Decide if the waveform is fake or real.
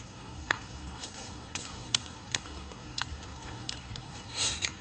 fake